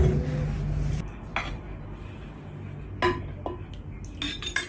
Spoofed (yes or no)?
no